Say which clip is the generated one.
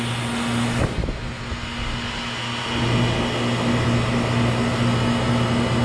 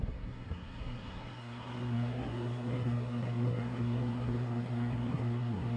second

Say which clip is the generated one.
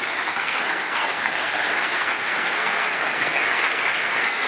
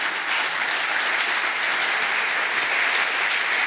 first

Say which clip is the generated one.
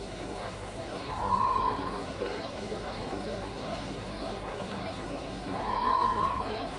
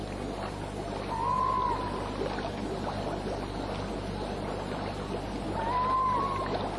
first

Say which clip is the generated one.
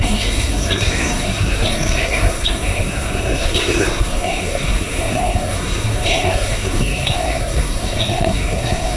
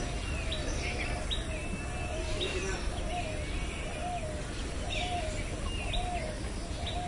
first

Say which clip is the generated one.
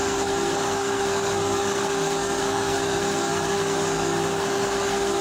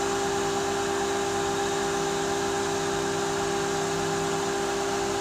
first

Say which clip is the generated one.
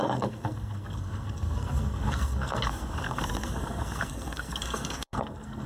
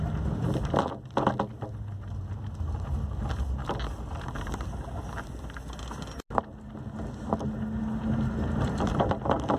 first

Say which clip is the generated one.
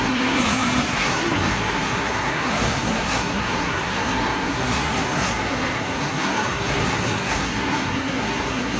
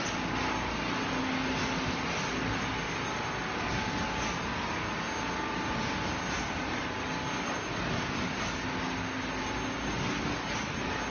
first